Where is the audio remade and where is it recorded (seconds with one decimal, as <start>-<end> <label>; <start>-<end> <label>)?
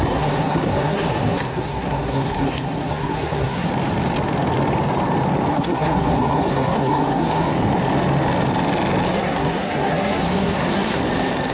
0.0-3.7 remade; 3.7-5.5 recorded; 5.5-7.5 remade; 7.5-9.1 recorded; 9.1-11.0 remade; 11.0-11.5 recorded